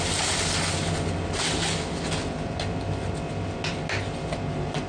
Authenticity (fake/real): real